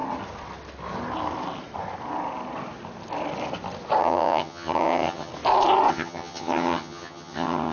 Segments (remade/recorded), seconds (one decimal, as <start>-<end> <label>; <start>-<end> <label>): 0.0-4.0 recorded; 4.0-5.3 remade; 5.3-5.9 recorded; 5.9-7.7 remade

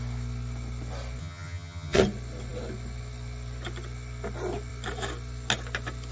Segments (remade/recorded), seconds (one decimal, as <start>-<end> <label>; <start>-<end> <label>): 0.0-1.2 recorded; 1.2-2.0 remade; 2.0-6.1 recorded

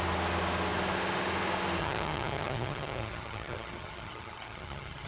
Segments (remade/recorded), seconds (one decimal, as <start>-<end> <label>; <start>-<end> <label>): 0.0-1.8 recorded; 1.8-5.1 remade

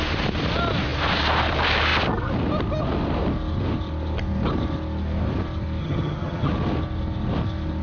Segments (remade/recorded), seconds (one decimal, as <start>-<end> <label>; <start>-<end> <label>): 0.0-5.8 recorded; 5.8-6.5 remade; 6.5-7.8 recorded

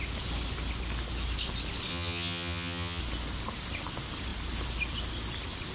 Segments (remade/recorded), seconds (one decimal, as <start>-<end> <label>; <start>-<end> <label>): 0.0-1.9 recorded; 1.9-3.0 remade; 3.0-5.7 recorded